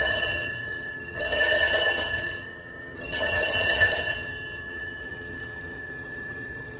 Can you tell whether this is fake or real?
fake